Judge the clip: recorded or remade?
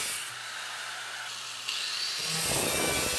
recorded